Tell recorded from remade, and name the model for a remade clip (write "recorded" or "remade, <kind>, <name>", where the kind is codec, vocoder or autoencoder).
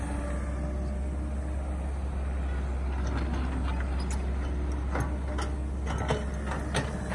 recorded